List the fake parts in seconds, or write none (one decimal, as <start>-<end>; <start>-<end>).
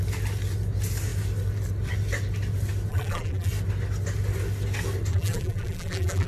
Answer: 2.9-3.5; 5.1-6.3